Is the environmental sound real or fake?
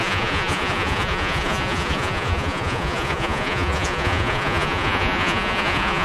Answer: fake